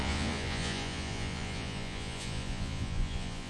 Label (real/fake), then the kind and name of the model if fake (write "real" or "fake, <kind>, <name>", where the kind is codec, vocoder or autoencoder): fake, vocoder, Vocos